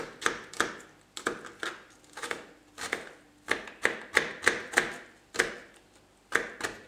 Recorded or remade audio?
recorded